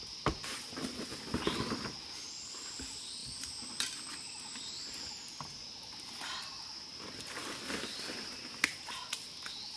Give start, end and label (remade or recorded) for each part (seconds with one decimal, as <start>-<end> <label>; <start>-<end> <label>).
0.0-9.8 recorded